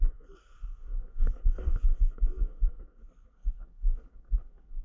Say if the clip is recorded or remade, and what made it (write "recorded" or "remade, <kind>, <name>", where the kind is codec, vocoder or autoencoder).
remade, codec, SNAC